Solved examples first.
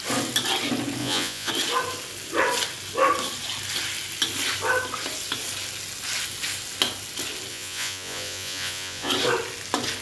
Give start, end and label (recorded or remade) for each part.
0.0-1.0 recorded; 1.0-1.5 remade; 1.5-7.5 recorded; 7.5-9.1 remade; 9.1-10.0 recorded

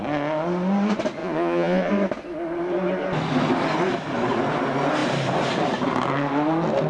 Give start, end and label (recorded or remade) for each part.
0.0-1.2 recorded; 1.2-1.9 remade; 1.9-6.9 recorded

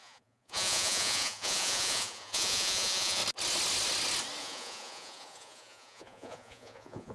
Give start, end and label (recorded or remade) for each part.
0.0-3.2 remade; 3.2-4.4 recorded; 4.4-7.1 remade

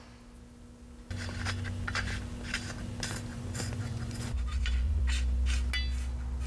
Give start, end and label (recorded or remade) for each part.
0.0-3.3 recorded; 3.3-5.0 remade; 5.0-6.5 recorded

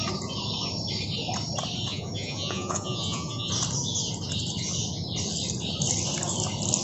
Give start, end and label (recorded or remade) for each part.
0.0-1.9 recorded; 1.9-3.5 remade; 3.5-6.8 recorded